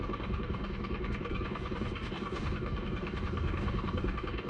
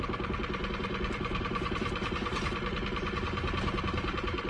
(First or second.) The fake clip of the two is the first